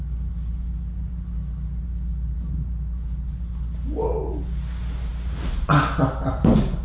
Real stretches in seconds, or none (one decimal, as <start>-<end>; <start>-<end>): 0.0-6.8